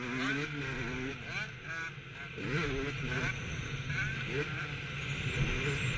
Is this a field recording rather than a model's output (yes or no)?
yes